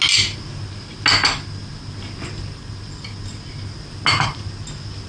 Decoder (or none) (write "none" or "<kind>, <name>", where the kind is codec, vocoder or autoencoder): none